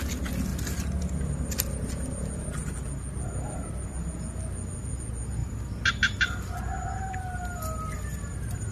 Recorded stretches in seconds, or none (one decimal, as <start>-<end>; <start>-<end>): 0.0-8.7